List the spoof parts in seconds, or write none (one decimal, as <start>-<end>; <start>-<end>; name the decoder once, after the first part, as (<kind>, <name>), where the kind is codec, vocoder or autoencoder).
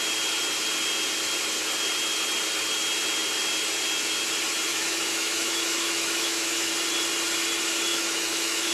4.7-6.7 (autoencoder, DAC-VAE); 7.9-8.7